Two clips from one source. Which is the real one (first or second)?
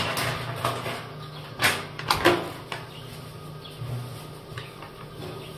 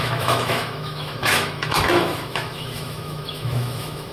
first